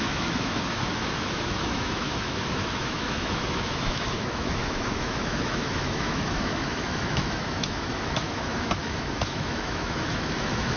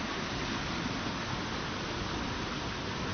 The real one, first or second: second